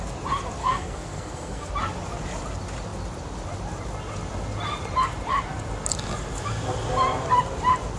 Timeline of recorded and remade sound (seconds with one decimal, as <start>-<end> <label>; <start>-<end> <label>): 0.0-0.6 recorded; 0.6-1.7 remade; 1.7-8.0 recorded